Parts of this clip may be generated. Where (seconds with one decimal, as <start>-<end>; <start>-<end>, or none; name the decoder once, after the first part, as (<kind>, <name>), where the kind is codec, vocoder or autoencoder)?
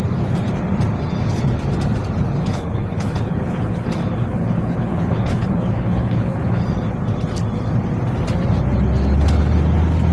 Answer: 2.4-6.6 (codec, HILCodec)